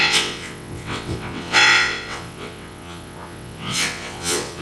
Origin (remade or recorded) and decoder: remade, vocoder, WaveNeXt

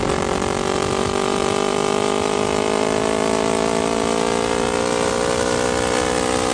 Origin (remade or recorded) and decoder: recorded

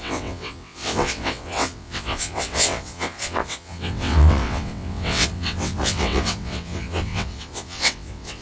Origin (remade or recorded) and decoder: remade, vocoder, WaveNeXt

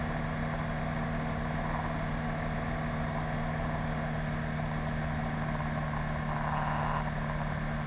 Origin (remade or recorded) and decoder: recorded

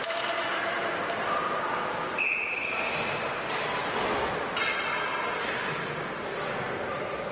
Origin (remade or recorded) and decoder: recorded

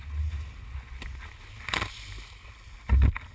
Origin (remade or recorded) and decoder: recorded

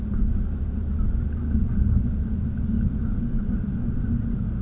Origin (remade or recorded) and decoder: recorded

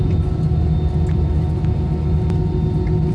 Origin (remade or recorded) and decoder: recorded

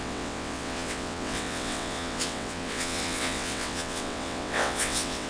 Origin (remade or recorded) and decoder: remade, vocoder, WaveNeXt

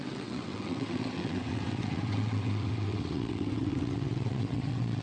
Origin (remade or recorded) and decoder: remade, vocoder, WaveNeXt